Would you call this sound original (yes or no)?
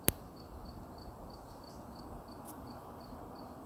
yes